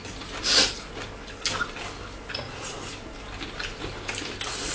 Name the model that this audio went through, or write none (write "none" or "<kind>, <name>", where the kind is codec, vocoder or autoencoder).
none